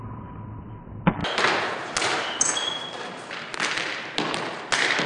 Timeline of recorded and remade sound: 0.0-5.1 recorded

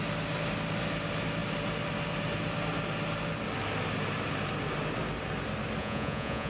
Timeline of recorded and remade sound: 0.0-5.8 recorded; 5.8-6.5 remade

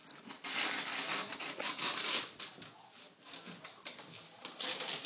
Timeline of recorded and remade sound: 0.0-5.1 recorded